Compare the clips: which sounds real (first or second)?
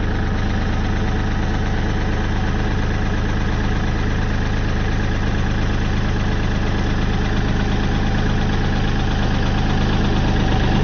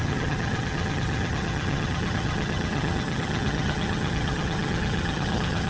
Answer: first